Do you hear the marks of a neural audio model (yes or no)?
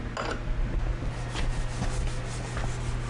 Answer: no